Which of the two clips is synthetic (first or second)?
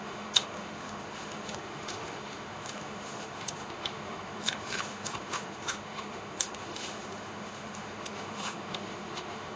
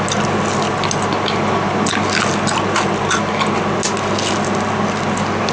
first